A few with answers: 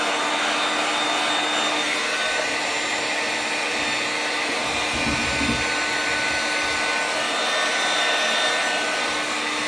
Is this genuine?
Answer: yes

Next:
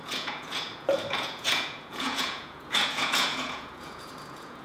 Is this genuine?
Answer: no